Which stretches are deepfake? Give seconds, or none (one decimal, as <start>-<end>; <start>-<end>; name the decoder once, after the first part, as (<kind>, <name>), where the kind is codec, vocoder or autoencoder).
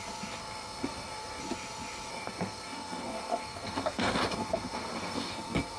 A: 0.4-1.4 (codec, SNAC); 2.1-5.8